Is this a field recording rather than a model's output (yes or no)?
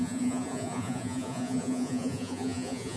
no